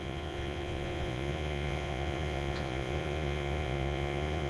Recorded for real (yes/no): no